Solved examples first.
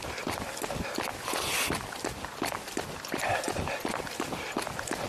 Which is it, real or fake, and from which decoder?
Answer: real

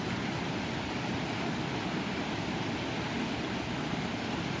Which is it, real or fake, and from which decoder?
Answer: real